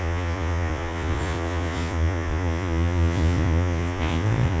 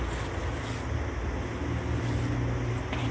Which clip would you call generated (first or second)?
first